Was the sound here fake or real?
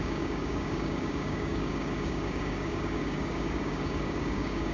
fake